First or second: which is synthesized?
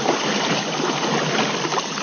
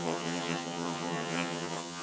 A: second